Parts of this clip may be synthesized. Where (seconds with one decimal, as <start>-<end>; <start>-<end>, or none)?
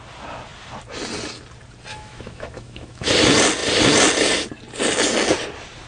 1.9-3.1